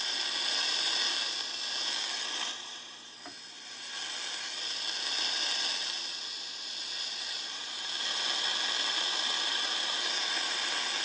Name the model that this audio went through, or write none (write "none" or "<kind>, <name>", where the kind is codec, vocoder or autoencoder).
none